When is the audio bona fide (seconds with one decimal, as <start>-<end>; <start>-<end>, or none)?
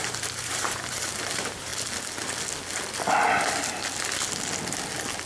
1.7-5.3